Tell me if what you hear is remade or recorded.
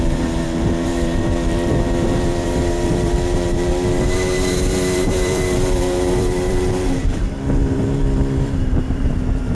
remade